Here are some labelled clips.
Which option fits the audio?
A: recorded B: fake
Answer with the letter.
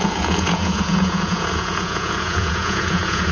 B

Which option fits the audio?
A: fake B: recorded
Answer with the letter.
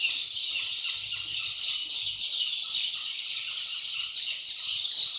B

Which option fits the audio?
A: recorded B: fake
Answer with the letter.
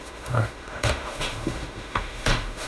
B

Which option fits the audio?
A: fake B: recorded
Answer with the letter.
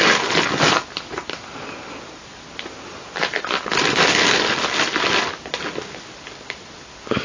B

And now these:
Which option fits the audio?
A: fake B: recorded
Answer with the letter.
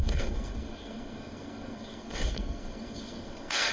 A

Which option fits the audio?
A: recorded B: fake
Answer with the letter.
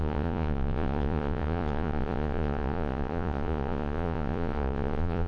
B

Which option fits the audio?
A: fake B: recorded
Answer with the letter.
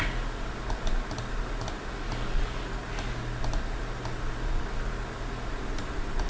B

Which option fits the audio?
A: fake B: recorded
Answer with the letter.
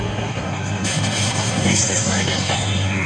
A